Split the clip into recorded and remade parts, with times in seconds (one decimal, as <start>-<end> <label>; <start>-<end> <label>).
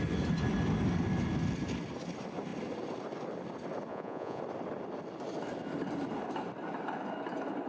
0.0-3.9 recorded; 3.9-4.4 remade; 4.4-7.7 recorded